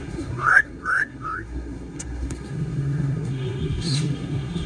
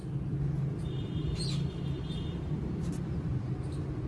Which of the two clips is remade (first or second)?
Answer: first